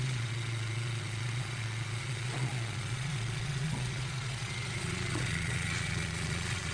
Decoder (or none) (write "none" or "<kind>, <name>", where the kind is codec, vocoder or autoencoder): vocoder, Vocos